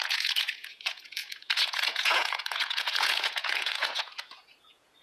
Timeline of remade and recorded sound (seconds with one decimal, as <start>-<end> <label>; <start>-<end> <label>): 0.0-5.0 remade